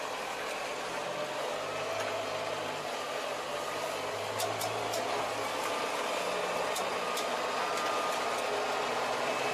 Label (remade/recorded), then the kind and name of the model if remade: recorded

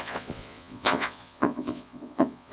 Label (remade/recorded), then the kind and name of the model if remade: remade, vocoder, Vocos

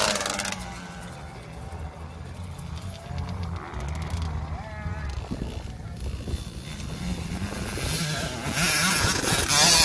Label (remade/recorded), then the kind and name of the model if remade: recorded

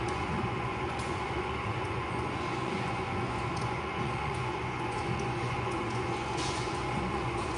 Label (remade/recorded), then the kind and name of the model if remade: remade, vocoder, Vocos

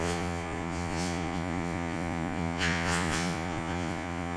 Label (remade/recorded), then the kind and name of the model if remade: remade, vocoder, Vocos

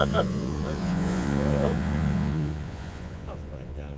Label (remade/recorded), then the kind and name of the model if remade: remade, vocoder, Vocos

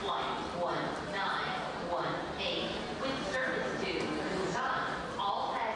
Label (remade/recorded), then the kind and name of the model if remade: recorded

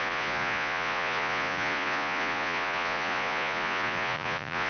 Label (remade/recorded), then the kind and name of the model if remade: remade, vocoder, Vocos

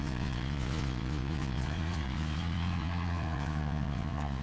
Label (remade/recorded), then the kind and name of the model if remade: remade, vocoder, Vocos